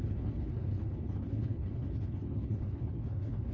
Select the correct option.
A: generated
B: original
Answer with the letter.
A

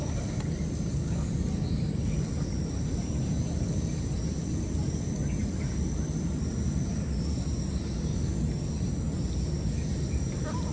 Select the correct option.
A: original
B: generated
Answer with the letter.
A